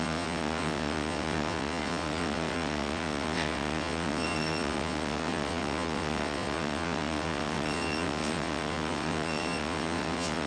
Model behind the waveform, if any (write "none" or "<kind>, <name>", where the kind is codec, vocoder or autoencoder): vocoder, WaveNeXt